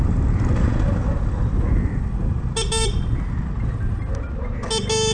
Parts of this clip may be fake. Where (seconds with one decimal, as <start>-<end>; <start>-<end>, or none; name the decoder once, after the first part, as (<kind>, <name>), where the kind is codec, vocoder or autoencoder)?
none